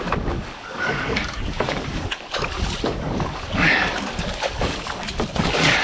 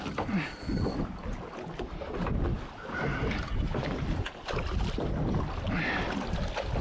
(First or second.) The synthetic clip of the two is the first